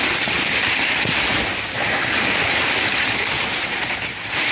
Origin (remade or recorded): recorded